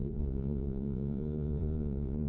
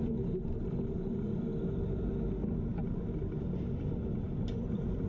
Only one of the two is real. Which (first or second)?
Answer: second